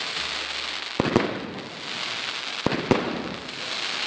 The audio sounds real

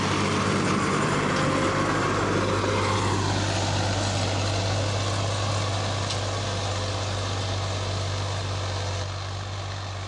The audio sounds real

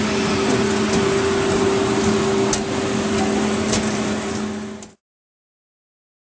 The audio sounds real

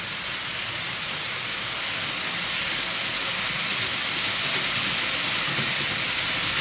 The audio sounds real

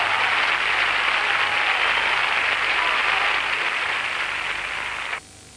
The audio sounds real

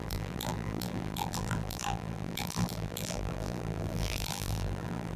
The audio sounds fake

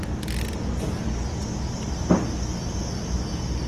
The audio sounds real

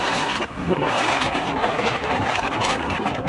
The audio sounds fake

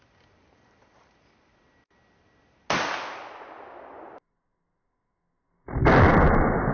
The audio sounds real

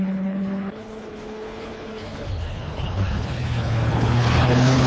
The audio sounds fake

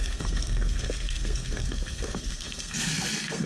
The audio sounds fake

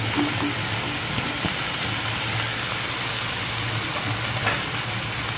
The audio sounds real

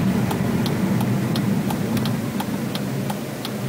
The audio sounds real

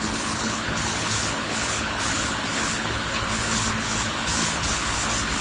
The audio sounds fake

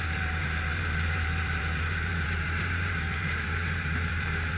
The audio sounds fake